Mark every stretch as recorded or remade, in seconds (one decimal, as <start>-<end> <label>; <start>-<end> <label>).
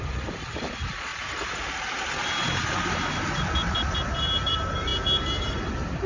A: 0.0-1.1 remade; 1.1-4.5 recorded; 4.5-4.9 remade; 4.9-6.1 recorded